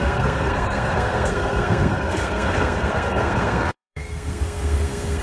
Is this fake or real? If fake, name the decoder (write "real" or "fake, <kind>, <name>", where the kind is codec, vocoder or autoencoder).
fake, codec, SNAC